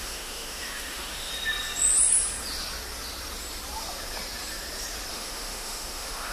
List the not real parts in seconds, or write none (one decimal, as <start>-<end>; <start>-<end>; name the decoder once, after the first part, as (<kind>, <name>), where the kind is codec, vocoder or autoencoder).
0.0-1.3 (autoencoder, DAC-VAE); 5.1-6.3